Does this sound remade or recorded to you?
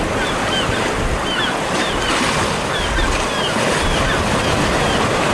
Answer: recorded